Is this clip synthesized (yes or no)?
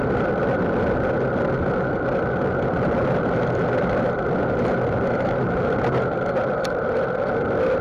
no